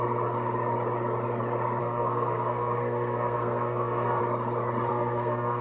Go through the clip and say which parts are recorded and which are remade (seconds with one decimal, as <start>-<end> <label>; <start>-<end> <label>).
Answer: 0.0-1.8 recorded; 1.8-4.2 remade; 4.2-4.9 recorded; 4.9-5.6 remade